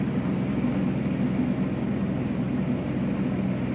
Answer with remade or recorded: recorded